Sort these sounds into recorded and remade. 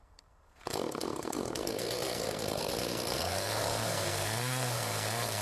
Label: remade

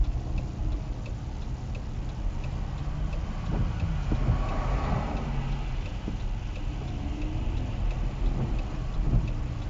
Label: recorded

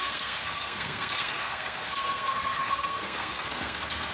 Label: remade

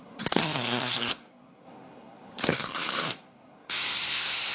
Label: remade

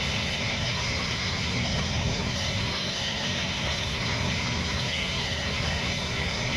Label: remade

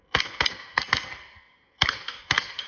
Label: remade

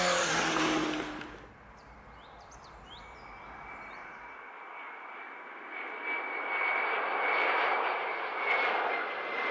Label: recorded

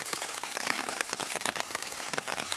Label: remade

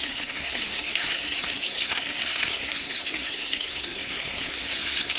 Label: remade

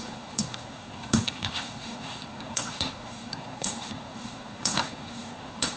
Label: remade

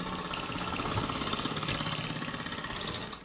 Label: recorded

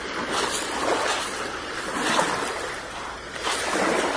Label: recorded